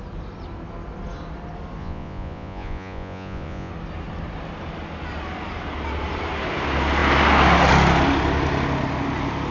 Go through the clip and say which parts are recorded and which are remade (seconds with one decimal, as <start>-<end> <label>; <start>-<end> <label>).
0.0-1.8 recorded; 1.8-3.7 remade; 3.7-9.5 recorded